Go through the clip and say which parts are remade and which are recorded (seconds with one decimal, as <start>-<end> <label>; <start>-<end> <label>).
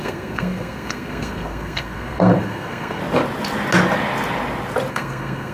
0.0-3.0 remade; 3.0-4.9 recorded; 4.9-5.5 remade